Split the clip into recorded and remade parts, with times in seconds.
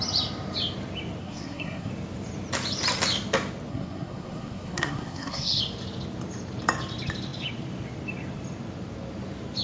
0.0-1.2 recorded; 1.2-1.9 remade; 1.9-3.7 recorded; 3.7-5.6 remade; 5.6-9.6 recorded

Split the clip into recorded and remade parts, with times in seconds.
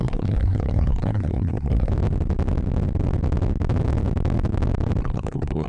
0.0-1.9 remade; 1.9-5.0 recorded; 5.0-5.7 remade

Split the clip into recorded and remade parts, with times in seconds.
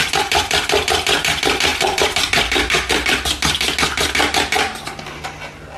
0.0-5.8 recorded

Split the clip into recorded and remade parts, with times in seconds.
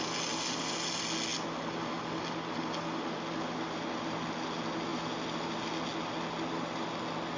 0.0-7.4 recorded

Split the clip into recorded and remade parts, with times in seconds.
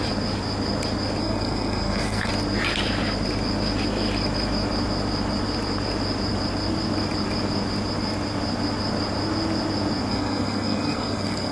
0.0-1.2 recorded; 1.2-2.3 remade; 2.3-10.1 recorded; 10.1-11.5 remade